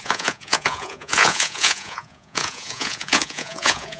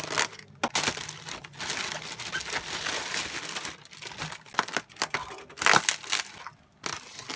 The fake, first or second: first